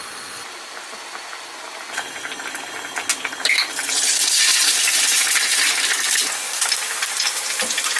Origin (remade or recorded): recorded